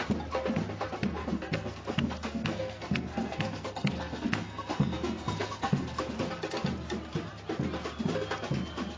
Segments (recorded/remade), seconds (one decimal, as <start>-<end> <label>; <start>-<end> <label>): 0.0-1.2 recorded; 1.2-6.0 remade; 6.0-9.0 recorded